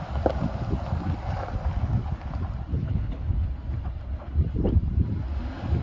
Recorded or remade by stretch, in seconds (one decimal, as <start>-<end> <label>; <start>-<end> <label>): 0.0-2.7 recorded; 2.7-3.3 remade; 3.3-5.8 recorded